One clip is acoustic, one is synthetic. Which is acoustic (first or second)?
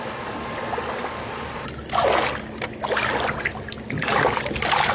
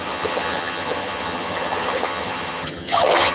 first